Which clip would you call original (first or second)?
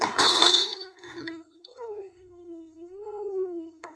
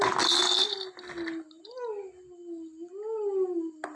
second